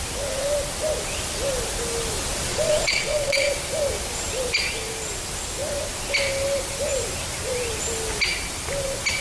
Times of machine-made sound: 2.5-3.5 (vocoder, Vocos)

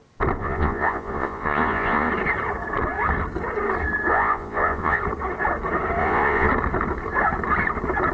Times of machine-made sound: 0.4-2.1 (vocoder, Vocos); 4.1-5.0; 6.0-6.5

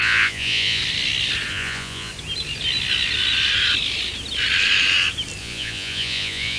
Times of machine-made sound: 0.0-0.8 (vocoder, Vocos); 1.5-2.1; 5.4-6.6

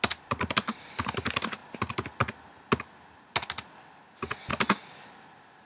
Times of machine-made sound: none

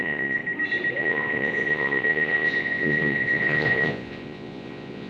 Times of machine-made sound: 0.0-0.4 (vocoder, Vocos); 1.0-5.1

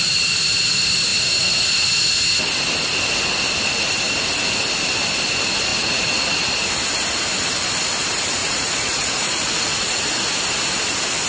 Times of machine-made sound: 5.7-6.3 (vocoder, Vocos); 8.4-10.0